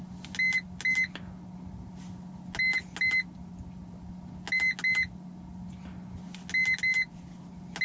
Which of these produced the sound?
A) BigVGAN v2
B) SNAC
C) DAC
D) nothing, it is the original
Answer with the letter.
D